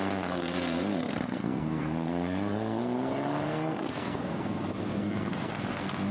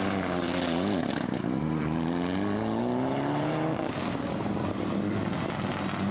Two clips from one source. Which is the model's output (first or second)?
first